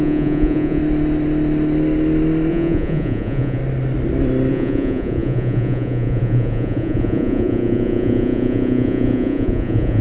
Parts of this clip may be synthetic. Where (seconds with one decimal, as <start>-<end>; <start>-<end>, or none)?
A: 0.0-0.8; 2.5-3.6; 4.5-10.0